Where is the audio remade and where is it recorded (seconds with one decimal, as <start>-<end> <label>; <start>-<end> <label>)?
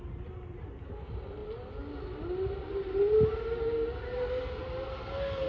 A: 0.0-4.9 recorded; 4.9-5.5 remade